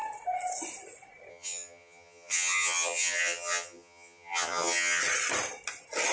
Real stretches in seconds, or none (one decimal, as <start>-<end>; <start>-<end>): 0.0-1.3; 5.0-6.1